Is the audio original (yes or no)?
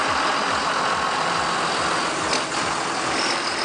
yes